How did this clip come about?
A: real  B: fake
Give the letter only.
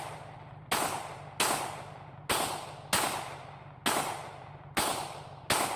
A